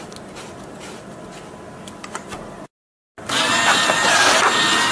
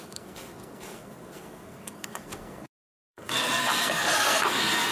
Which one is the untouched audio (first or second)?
first